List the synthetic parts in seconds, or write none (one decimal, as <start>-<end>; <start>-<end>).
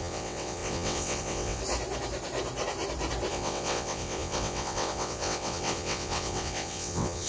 0.0-1.6; 3.3-7.3